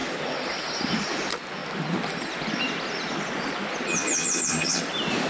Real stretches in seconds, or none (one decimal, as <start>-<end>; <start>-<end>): 0.0-3.9; 4.8-5.3